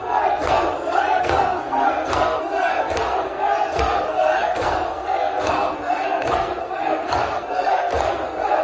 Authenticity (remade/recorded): remade